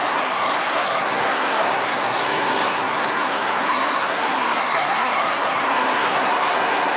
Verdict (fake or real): fake